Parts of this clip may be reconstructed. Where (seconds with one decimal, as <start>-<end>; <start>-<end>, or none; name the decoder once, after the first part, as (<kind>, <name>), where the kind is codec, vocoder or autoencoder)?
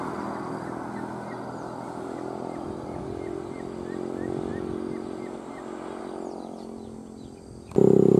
none